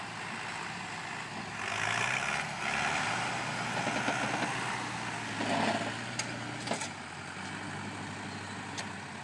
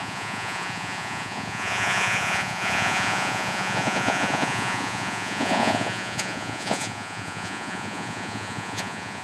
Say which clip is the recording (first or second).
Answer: first